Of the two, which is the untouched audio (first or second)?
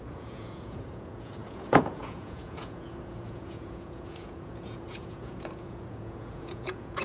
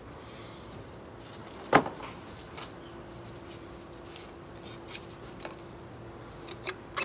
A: second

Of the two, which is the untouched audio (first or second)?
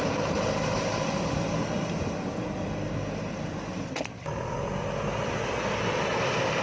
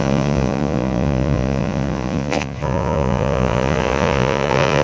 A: first